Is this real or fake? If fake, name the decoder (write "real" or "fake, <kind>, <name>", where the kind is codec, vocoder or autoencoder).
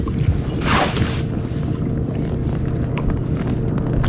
real